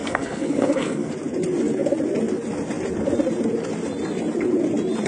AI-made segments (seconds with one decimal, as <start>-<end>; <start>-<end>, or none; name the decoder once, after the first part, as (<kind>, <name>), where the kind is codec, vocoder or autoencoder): 0.0-1.1 (codec, SNAC)